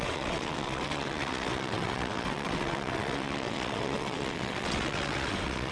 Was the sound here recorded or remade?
remade